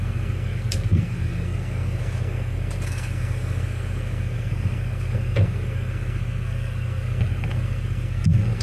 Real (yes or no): no